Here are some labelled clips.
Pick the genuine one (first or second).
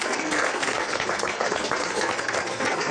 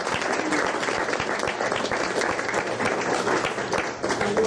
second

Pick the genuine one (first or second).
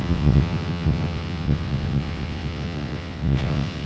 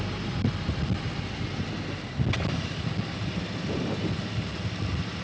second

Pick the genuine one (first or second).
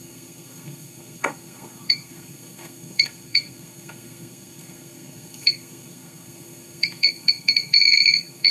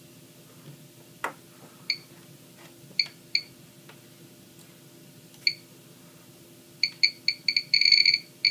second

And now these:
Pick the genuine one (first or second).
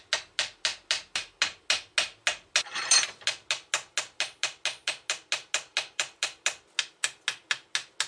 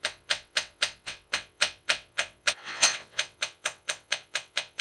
first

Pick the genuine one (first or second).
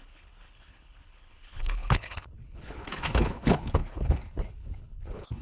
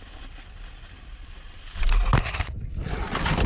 second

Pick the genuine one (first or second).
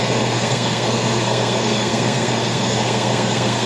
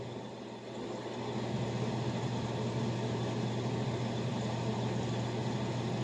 second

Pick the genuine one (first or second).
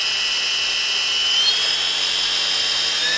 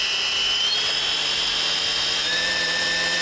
first